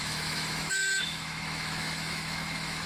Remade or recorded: remade